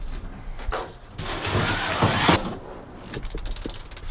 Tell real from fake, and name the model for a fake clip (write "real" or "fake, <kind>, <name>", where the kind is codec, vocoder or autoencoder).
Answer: real